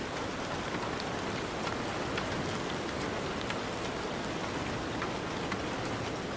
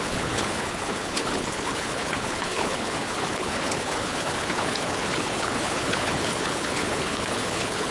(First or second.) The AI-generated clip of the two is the second